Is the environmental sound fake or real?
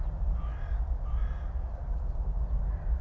real